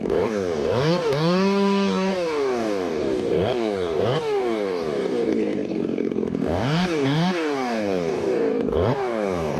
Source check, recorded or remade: remade